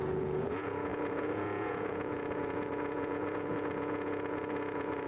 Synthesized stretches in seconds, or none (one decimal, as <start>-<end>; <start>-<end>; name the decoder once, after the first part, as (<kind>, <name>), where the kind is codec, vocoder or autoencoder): 0.0-5.1 (vocoder, Vocos)